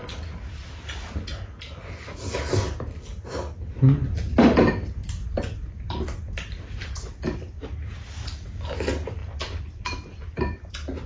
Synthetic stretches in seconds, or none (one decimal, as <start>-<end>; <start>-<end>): 9.2-10.7